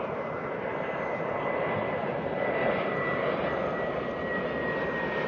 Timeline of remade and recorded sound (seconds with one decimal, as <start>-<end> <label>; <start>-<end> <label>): 0.0-5.3 recorded

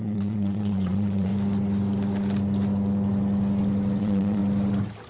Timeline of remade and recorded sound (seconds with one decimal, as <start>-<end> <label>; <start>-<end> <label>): 0.0-1.3 remade; 1.3-4.0 recorded; 4.0-4.4 remade; 4.4-5.1 recorded

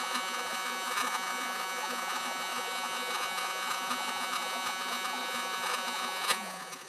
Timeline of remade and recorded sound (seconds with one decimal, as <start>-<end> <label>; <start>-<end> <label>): 0.0-6.9 remade

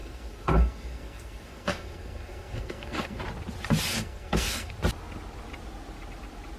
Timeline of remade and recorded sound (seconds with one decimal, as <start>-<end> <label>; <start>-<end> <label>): 0.0-3.2 remade; 3.2-3.9 recorded; 3.9-4.7 remade; 4.7-6.6 recorded

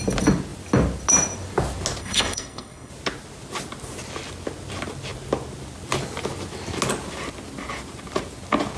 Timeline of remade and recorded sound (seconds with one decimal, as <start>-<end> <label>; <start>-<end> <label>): 0.0-2.0 recorded; 2.0-2.9 remade; 2.9-8.8 recorded

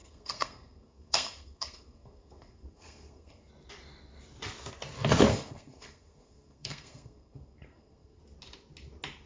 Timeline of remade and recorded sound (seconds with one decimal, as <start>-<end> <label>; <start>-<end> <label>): 0.0-3.5 remade; 3.5-5.3 recorded; 5.3-8.2 remade; 8.2-9.3 recorded

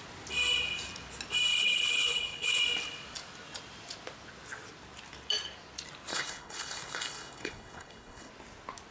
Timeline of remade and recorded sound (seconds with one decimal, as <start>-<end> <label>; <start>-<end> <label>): 0.0-1.5 recorded; 1.5-2.6 remade; 2.6-6.1 recorded; 6.1-8.3 remade; 8.3-8.9 recorded